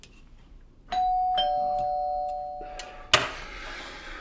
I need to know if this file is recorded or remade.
recorded